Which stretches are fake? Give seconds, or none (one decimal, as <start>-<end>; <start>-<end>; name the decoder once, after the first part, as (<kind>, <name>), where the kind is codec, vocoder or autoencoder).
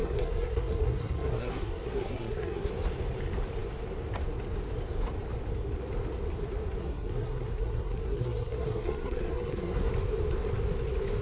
0.0-2.7 (codec, SNAC); 6.8-9.9